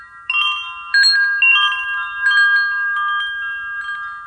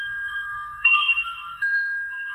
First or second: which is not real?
second